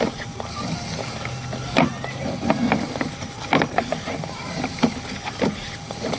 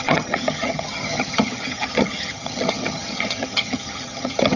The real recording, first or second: first